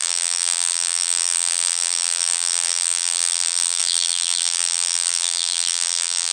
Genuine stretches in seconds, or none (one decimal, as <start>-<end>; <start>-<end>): none